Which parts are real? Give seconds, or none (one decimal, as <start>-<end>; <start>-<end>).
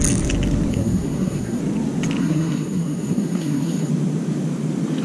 0.0-0.7; 1.6-2.2; 3.9-5.0